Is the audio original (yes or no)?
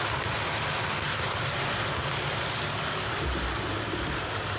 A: yes